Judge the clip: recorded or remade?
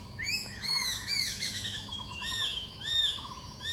remade